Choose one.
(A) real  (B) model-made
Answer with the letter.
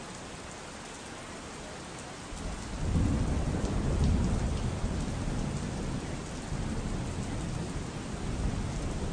A